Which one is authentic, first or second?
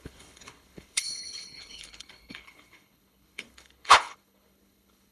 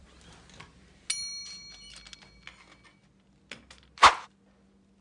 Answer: second